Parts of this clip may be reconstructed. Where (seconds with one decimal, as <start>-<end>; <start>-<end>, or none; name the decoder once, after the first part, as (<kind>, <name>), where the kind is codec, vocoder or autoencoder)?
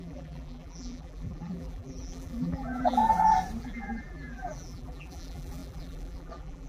0.0-3.0 (vocoder, BigVGAN v2); 3.6-6.7